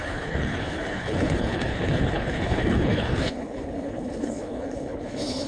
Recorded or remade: remade